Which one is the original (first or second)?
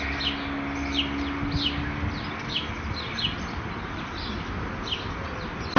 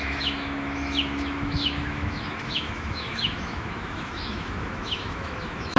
first